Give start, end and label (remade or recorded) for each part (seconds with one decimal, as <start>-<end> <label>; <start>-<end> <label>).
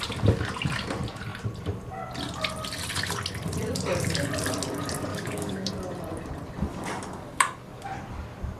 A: 0.0-5.1 recorded; 5.1-5.7 remade; 5.7-6.7 recorded; 6.7-7.8 remade; 7.8-8.6 recorded